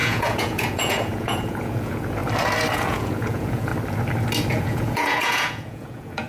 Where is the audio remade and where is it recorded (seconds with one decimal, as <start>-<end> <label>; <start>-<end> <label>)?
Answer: 0.0-2.2 remade; 2.2-2.7 recorded; 2.7-3.7 remade; 3.7-4.5 recorded; 4.5-6.3 remade